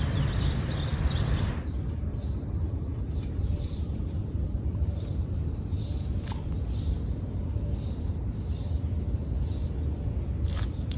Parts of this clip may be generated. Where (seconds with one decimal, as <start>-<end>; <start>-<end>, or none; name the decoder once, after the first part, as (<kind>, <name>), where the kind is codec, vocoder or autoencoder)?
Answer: 0.0-0.9 (vocoder, BigVGAN v2); 3.4-7.5; 8.3-11.0